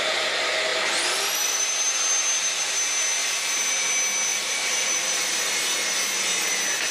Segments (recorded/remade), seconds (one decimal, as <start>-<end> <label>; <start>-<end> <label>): 0.0-3.2 recorded; 3.2-3.7 remade; 3.7-4.3 recorded; 4.3-5.6 remade; 5.6-6.9 recorded